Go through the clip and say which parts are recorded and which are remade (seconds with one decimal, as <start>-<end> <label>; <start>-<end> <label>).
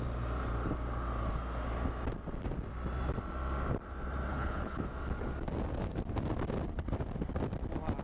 0.0-4.3 recorded; 4.3-4.9 remade; 4.9-8.0 recorded